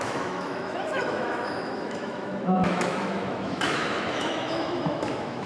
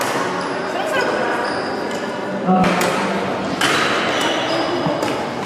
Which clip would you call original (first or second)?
second